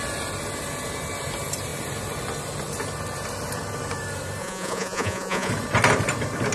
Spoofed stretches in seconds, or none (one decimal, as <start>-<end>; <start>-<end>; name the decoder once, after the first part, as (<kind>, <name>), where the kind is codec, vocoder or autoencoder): 4.4-5.5 (vocoder, Vocos)